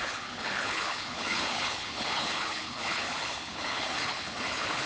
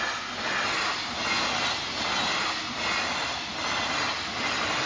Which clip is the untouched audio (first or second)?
second